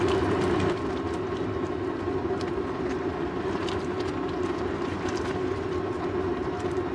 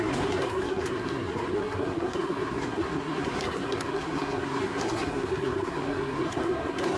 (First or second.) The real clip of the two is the first